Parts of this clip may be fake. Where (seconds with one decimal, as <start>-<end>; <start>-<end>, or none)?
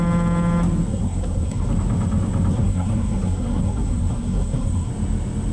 0.9-1.7; 2.5-4.9